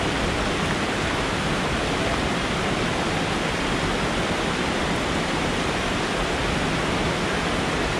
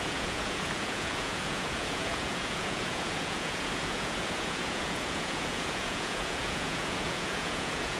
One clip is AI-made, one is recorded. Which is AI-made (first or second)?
second